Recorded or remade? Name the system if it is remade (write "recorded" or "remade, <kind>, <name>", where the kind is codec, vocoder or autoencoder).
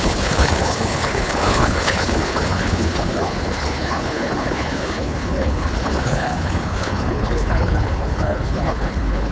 remade, codec, HILCodec